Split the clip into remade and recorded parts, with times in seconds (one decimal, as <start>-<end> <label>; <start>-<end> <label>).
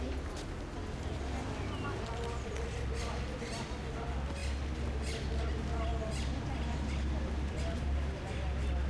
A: 0.0-8.9 recorded